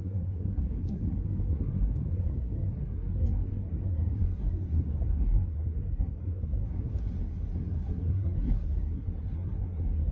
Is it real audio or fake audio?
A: fake